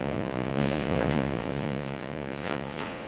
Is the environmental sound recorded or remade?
remade